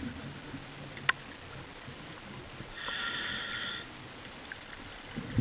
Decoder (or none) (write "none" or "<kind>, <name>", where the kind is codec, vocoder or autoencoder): none